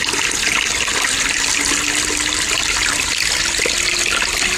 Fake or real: real